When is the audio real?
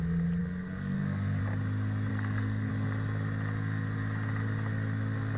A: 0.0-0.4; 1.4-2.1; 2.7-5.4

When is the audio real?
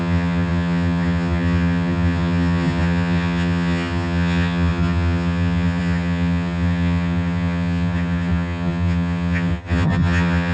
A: none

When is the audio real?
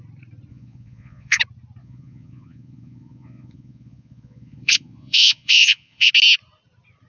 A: 0.0-0.5; 1.4-1.8; 6.1-7.1